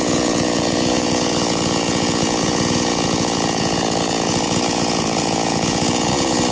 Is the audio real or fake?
fake